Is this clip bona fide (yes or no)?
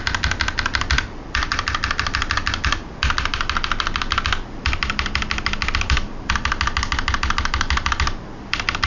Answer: yes